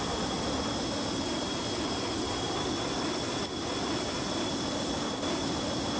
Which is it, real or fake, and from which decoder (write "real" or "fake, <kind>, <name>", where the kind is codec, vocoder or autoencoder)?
real